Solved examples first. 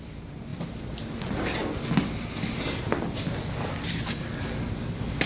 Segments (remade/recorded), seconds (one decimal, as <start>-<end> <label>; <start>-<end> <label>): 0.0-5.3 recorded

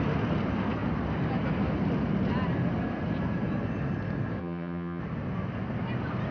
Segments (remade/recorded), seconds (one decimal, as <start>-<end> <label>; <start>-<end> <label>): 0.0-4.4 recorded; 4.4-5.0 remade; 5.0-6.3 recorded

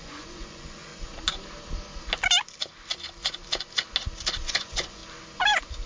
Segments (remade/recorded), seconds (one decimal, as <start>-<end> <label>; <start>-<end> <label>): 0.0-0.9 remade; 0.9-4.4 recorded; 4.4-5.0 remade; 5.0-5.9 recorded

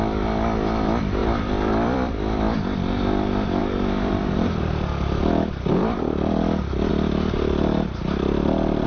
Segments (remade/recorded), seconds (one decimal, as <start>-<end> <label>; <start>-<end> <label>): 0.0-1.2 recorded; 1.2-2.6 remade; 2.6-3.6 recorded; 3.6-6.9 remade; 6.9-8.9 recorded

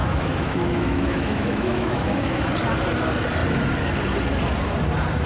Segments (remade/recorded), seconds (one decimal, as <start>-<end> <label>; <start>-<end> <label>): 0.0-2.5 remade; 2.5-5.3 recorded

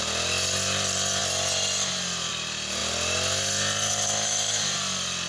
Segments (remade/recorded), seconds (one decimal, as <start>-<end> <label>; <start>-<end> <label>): 0.0-5.3 recorded

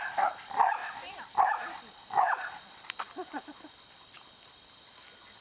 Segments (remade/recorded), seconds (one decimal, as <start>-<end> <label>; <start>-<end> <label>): 0.0-5.4 remade

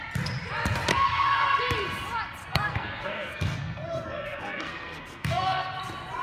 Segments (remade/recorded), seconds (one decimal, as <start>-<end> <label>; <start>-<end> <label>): 0.0-0.9 recorded; 0.9-1.6 remade; 1.6-2.4 recorded; 2.4-5.8 remade; 5.8-6.2 recorded